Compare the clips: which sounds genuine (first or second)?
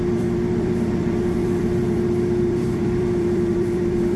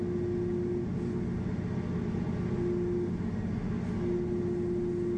second